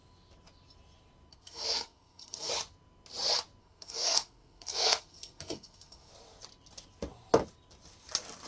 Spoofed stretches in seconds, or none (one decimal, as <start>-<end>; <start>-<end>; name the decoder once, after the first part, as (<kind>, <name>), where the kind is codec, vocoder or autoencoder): 1.3-2.5 (codec, SNAC); 3.6-6.1

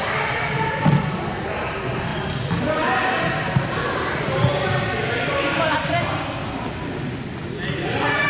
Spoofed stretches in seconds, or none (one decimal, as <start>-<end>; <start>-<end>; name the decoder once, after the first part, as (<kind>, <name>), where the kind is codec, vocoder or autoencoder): none